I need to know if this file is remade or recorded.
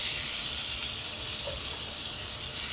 recorded